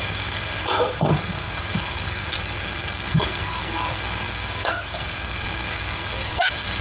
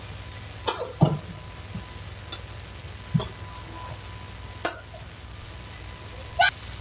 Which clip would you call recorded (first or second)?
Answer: second